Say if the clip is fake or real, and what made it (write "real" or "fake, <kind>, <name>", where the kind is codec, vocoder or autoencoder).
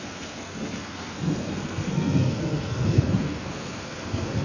fake, codec, SNAC